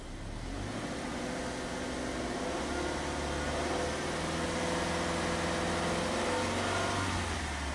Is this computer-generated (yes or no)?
no